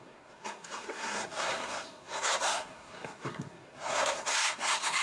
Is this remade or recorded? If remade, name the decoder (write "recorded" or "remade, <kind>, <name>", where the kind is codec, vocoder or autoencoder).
remade, codec, SNAC